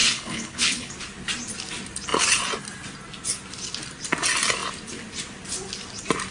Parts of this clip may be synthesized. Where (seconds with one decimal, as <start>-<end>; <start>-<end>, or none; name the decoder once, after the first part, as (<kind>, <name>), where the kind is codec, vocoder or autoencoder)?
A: 0.0-0.9 (codec, HILCodec)